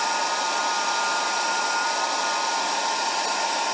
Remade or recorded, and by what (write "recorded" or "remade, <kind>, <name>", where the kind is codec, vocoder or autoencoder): recorded